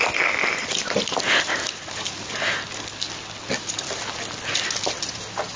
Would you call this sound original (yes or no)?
yes